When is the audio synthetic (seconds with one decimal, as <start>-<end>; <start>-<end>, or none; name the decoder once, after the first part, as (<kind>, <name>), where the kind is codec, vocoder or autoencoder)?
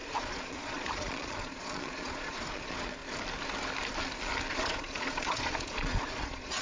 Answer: 0.0-3.0 (vocoder, Vocos); 4.5-6.6